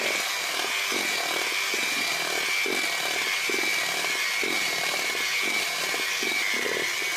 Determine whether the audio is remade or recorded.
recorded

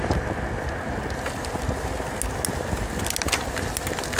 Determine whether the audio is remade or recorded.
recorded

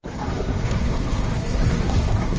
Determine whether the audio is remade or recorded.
remade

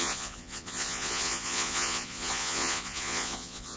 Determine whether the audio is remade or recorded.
remade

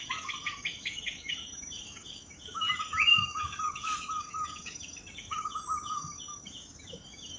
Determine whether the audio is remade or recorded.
remade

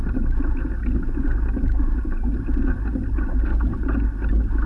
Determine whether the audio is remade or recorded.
recorded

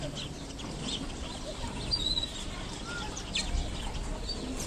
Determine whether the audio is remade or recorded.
remade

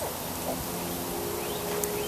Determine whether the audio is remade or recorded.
recorded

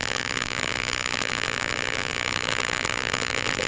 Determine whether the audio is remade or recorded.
remade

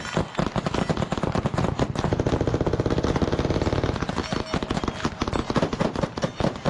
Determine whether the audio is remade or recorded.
recorded